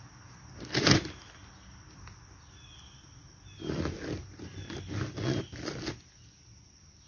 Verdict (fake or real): real